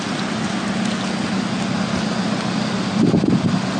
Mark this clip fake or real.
real